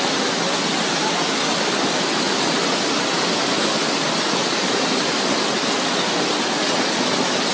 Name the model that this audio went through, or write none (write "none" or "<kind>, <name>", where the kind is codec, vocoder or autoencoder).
none